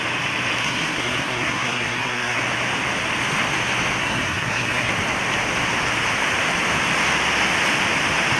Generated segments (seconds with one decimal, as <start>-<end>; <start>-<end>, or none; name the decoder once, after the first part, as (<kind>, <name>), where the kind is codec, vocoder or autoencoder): 0.6-2.4 (codec, SNAC); 4.0-4.9